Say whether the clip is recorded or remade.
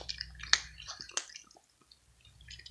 recorded